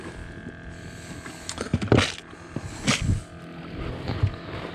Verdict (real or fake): real